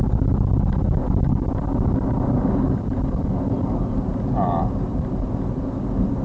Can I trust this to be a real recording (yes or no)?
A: yes